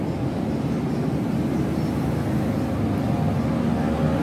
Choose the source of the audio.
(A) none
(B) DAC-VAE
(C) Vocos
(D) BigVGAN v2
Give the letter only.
A